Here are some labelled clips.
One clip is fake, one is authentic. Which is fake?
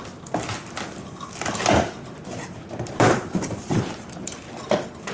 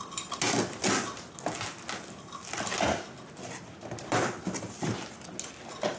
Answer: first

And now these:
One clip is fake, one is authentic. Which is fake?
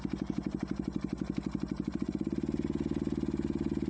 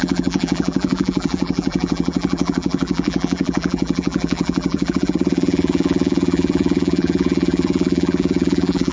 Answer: second